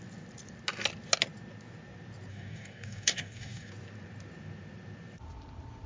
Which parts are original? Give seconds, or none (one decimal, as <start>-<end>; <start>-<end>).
0.0-2.3; 3.7-5.9